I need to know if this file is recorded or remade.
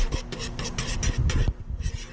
recorded